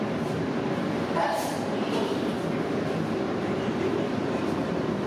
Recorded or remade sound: remade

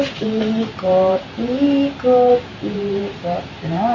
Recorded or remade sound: remade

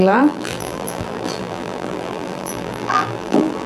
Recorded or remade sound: remade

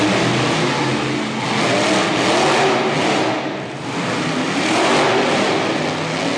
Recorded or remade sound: recorded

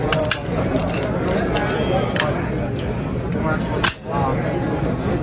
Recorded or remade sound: recorded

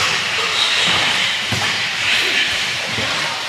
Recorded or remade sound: remade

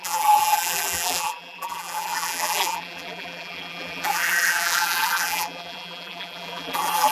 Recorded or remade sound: remade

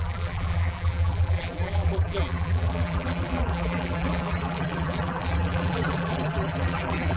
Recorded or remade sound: remade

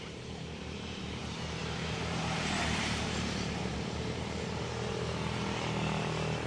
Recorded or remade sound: remade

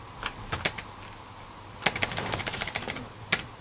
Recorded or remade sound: recorded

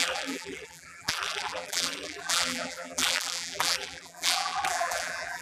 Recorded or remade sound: remade